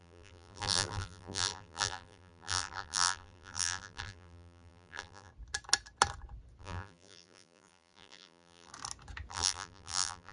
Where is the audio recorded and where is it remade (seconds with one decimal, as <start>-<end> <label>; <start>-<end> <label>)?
0.0-5.3 remade; 5.3-6.6 recorded; 6.6-8.7 remade; 8.7-9.3 recorded; 9.3-10.3 remade